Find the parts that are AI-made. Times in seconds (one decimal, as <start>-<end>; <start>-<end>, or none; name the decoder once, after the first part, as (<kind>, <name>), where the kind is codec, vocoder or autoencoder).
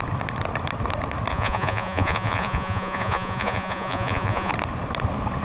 1.3-4.5 (vocoder, Vocos)